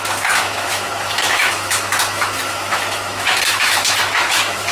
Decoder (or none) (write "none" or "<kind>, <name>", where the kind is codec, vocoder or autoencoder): autoencoder, DAC-VAE